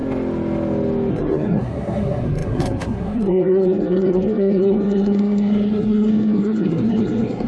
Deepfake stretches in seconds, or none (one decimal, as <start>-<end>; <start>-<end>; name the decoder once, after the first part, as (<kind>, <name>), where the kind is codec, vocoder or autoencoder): 1.1-7.5 (codec, SNAC)